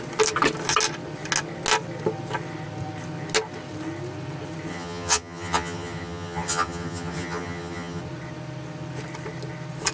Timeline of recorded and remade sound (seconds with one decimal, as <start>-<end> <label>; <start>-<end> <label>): 0.0-4.7 recorded; 4.7-8.0 remade; 8.0-9.9 recorded